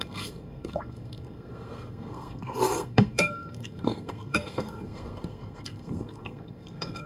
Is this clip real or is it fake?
fake